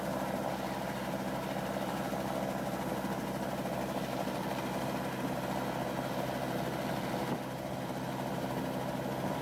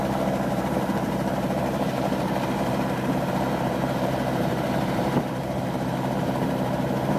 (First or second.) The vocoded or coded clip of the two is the second